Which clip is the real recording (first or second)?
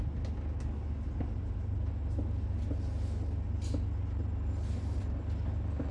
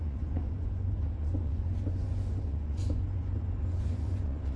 first